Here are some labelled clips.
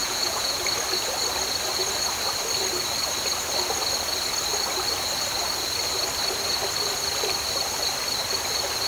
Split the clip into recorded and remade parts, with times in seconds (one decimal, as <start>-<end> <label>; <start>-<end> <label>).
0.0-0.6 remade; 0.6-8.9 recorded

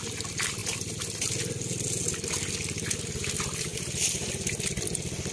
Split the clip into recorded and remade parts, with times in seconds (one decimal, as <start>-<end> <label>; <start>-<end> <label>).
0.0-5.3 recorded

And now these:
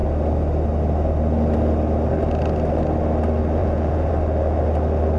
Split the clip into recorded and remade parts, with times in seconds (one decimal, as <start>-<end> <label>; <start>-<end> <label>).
0.0-3.6 recorded; 3.6-4.1 remade; 4.1-5.2 recorded

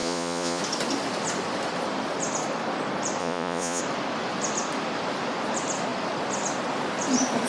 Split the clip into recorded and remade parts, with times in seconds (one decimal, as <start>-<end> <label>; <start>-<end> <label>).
0.0-0.6 remade; 0.6-3.2 recorded; 3.2-3.8 remade; 3.8-7.5 recorded

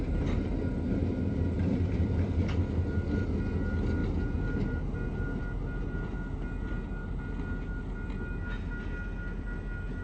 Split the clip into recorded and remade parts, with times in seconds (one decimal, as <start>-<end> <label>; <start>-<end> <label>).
0.0-10.0 recorded